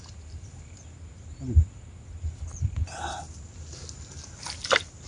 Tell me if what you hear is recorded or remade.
recorded